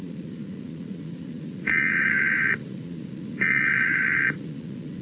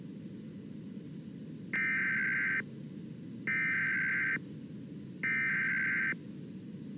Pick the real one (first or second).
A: second